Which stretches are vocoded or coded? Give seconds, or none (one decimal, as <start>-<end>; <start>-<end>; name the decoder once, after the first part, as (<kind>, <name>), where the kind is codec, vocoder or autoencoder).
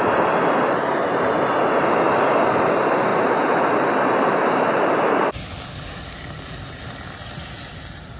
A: none